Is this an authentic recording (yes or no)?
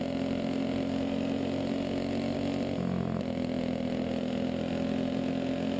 yes